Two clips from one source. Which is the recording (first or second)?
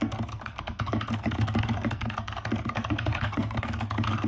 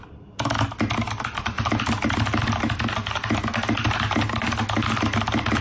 second